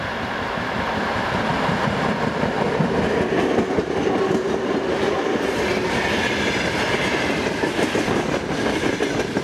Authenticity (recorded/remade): recorded